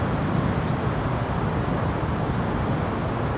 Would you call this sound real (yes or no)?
yes